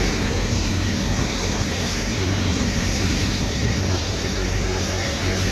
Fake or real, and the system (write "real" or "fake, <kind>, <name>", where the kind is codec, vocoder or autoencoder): fake, codec, SNAC